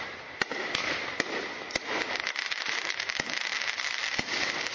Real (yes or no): yes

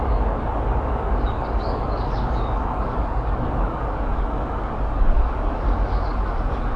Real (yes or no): no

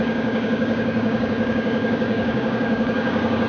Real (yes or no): no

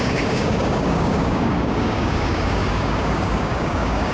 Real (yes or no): no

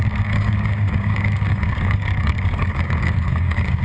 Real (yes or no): no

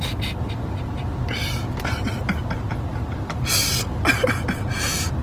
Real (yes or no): yes